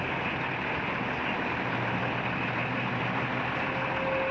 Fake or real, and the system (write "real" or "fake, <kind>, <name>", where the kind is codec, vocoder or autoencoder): real